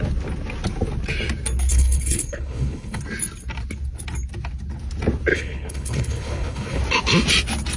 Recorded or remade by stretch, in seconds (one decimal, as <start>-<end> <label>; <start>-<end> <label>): 0.0-1.7 recorded; 1.7-3.0 remade; 3.0-5.3 recorded; 5.3-6.8 remade; 6.8-7.8 recorded